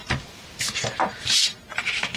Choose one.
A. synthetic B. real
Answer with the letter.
A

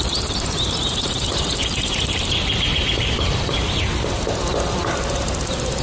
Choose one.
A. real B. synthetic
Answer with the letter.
B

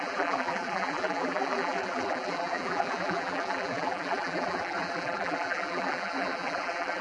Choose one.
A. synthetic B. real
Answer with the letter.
A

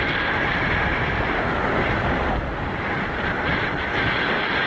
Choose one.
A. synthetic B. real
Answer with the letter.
B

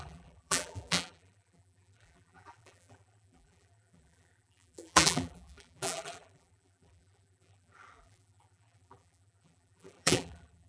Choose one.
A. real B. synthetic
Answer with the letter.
B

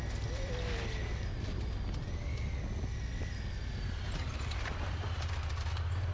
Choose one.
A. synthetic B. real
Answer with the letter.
B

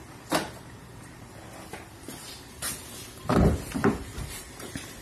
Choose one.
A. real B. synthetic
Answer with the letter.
B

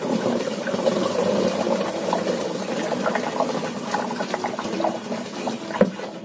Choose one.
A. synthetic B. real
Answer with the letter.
B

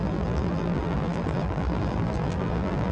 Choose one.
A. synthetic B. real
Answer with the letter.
A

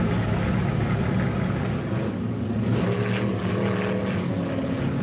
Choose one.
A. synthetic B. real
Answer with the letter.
B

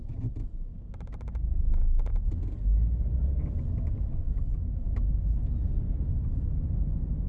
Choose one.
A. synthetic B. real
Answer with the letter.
B